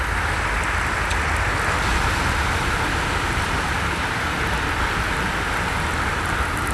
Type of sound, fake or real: real